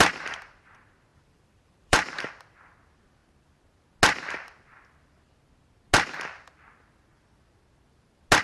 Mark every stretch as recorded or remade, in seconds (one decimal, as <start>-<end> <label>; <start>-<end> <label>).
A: 0.0-1.1 recorded; 1.1-2.3 remade; 2.3-8.4 recorded